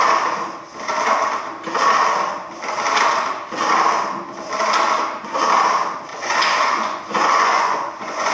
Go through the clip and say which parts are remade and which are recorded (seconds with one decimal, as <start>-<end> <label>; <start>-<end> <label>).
0.0-6.1 recorded; 6.1-8.3 remade